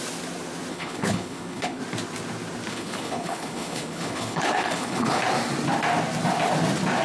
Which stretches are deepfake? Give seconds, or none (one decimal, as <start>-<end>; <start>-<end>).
0.7-1.8; 2.7-5.2